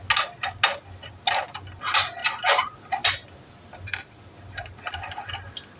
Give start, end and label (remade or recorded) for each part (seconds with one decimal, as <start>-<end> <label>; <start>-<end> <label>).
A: 0.0-2.2 recorded; 2.2-5.1 remade; 5.1-5.8 recorded